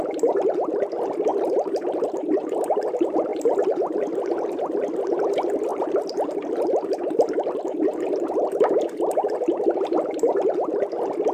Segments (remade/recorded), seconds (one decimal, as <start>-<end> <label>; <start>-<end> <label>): 0.0-1.3 recorded; 1.3-2.6 remade; 2.6-3.3 recorded; 3.3-4.0 remade; 4.0-5.7 recorded; 5.7-6.6 remade; 6.6-11.3 recorded